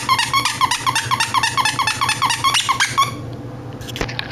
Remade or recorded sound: recorded